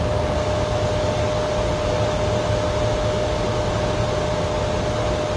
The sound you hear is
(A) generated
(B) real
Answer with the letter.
B